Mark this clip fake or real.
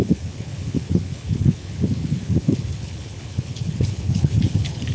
fake